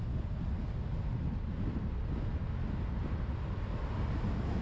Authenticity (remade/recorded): recorded